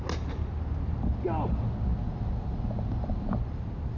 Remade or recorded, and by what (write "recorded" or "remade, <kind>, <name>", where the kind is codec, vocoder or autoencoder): recorded